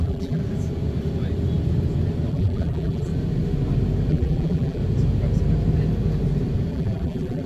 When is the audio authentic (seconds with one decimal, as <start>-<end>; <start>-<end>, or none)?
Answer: 0.4-2.3; 3.1-4.1; 4.8-6.7